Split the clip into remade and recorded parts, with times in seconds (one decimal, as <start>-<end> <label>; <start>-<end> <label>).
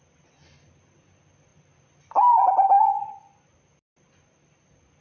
0.0-5.0 recorded